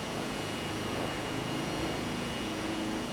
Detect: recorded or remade remade